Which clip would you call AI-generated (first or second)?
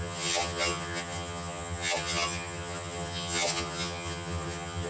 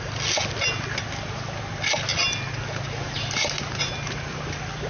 first